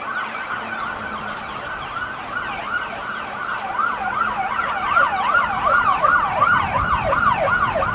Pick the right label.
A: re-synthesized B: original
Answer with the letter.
B